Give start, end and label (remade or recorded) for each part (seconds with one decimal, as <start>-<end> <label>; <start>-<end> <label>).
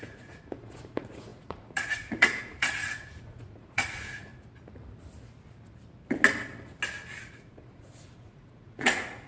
0.0-4.3 remade; 4.3-7.2 recorded; 7.2-9.3 remade